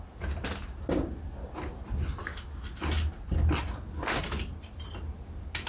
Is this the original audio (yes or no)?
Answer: yes